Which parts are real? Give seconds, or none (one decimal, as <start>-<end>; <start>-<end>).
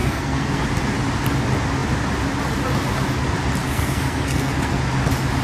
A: 0.6-3.6; 4.8-5.4